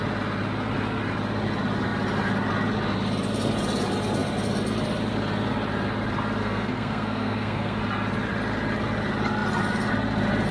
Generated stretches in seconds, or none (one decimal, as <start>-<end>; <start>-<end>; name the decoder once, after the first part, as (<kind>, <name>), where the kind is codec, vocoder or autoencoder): 6.4-7.8 (codec, SNAC)